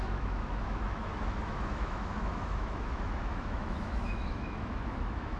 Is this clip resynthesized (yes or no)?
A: yes